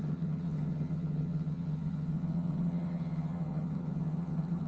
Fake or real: fake